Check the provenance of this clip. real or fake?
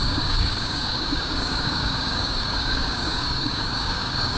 fake